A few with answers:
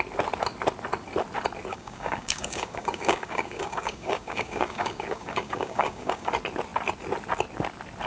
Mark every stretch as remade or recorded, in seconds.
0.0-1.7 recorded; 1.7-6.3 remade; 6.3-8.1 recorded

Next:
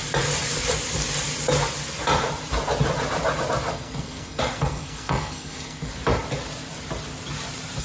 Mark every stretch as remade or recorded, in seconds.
0.0-3.7 recorded; 3.7-5.9 remade; 5.9-7.8 recorded

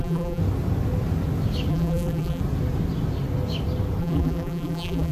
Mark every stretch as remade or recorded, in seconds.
0.0-0.4 remade; 0.4-1.7 recorded; 1.7-2.4 remade; 2.4-4.0 recorded; 4.0-5.1 remade

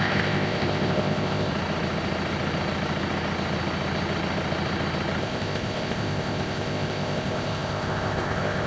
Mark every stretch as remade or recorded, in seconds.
0.0-1.5 remade; 1.5-5.2 recorded; 5.2-8.7 remade